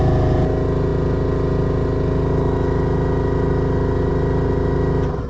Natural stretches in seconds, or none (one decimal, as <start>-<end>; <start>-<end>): 0.0-5.3